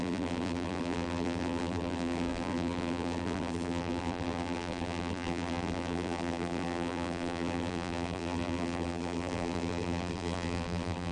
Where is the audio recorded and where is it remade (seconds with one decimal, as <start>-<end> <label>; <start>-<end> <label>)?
0.0-11.1 remade

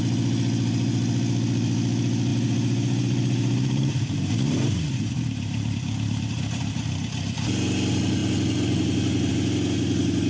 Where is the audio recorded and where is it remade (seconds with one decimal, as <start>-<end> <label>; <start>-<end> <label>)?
0.0-2.3 recorded; 2.3-6.3 remade; 6.3-10.3 recorded